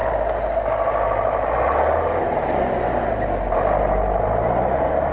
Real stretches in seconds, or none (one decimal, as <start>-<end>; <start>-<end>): 0.0-5.1